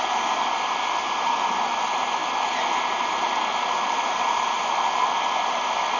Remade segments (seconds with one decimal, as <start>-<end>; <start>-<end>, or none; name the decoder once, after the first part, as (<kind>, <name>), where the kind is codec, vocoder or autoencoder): none